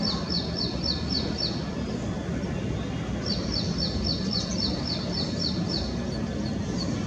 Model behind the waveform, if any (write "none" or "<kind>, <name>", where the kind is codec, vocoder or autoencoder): none